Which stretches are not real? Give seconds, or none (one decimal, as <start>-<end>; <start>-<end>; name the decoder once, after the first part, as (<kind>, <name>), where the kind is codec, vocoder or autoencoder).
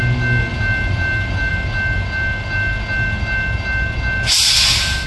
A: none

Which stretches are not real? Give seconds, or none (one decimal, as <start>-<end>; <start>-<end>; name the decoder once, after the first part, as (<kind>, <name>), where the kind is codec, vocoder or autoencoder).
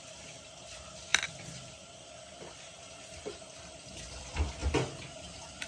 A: 0.0-4.6 (vocoder, BigVGAN v2); 5.3-5.7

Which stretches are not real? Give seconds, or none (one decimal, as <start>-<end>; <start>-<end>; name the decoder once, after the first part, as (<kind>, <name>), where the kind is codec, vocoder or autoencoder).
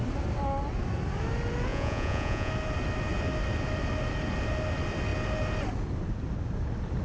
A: 1.7-2.5 (vocoder, Vocos)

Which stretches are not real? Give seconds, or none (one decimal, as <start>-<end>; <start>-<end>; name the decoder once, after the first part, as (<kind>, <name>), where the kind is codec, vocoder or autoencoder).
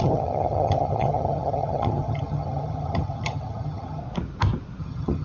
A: 0.0-4.0 (vocoder, HiFi-GAN); 4.8-5.2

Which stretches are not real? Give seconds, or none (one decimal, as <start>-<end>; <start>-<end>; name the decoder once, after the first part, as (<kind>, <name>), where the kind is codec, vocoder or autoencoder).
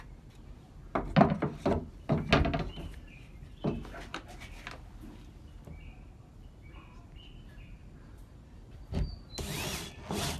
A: none